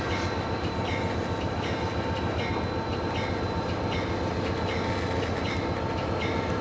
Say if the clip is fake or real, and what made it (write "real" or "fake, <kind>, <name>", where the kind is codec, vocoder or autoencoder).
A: real